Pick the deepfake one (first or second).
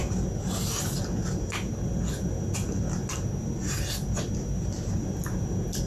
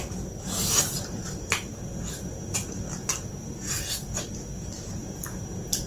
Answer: second